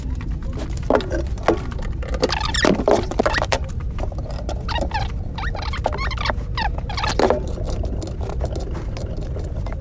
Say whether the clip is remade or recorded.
recorded